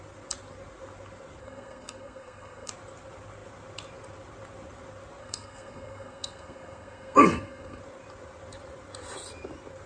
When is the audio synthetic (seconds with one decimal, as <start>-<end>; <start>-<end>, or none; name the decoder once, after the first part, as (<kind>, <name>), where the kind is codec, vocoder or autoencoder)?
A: 1.4-2.7 (codec, SNAC); 5.2-7.8